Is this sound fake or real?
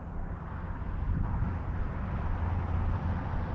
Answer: real